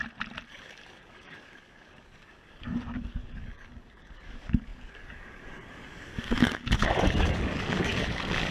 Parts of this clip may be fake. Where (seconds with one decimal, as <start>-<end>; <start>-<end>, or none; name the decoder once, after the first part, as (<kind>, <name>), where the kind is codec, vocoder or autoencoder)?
0.5-8.5 (codec, DAC)